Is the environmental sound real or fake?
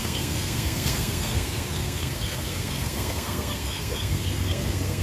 fake